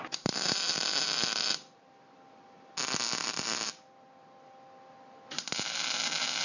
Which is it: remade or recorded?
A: recorded